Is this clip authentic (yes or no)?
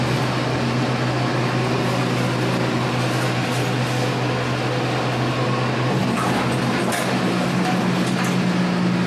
yes